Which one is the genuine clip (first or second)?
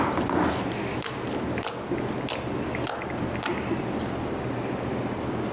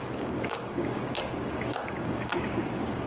first